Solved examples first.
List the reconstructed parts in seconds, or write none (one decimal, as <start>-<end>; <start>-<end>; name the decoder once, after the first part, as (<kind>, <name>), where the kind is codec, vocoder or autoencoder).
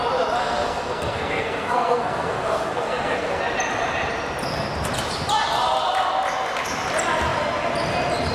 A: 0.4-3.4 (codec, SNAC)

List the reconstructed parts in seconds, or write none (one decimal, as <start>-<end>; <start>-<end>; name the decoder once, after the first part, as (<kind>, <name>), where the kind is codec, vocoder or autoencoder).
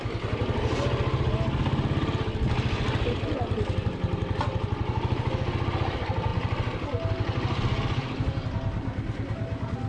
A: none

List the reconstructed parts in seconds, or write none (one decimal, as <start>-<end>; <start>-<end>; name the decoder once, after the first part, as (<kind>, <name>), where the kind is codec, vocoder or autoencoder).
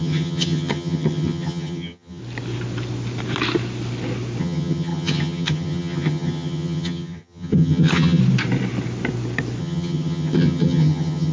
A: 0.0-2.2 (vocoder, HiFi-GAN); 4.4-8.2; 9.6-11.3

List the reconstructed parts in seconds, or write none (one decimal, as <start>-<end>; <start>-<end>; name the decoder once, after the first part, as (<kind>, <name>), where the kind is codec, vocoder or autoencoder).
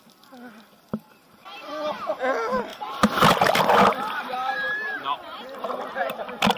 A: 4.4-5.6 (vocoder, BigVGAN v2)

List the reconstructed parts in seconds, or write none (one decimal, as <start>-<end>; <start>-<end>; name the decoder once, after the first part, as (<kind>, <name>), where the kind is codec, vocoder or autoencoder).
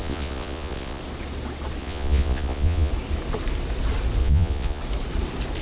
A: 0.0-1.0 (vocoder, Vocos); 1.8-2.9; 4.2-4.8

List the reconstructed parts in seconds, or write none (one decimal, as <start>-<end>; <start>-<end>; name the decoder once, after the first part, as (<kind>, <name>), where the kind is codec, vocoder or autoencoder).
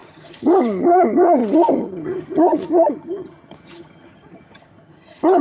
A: 0.0-5.4 (vocoder, HiFi-GAN)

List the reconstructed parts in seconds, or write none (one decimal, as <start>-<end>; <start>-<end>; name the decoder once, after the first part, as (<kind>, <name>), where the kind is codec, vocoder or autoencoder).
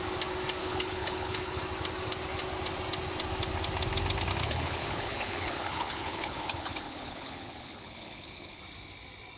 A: 0.6-1.6 (codec, HILCodec); 4.4-8.6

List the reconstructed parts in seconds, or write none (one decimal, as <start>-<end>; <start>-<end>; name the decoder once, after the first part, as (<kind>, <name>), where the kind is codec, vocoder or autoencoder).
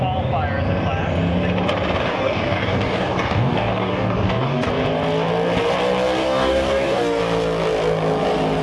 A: 2.1-4.7 (codec, DAC); 6.2-7.2